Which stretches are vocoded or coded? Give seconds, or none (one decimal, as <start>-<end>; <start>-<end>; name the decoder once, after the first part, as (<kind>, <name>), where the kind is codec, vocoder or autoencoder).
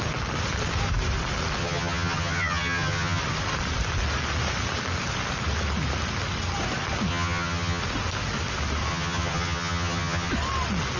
1.6-3.2 (vocoder, HiFi-GAN); 7.1-7.8; 8.9-10.3